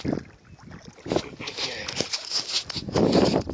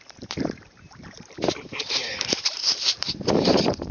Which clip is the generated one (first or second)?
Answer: second